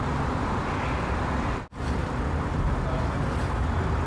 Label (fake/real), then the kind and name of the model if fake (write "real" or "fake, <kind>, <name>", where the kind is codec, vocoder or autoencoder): real